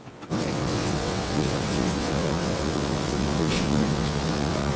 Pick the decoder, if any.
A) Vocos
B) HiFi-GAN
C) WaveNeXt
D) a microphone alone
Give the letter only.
C